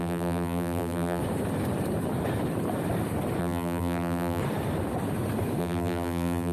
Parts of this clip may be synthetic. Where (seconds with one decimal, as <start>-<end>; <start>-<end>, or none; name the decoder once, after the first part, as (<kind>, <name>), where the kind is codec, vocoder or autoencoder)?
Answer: 0.0-1.2 (vocoder, BigVGAN v2); 3.4-4.4; 5.6-6.5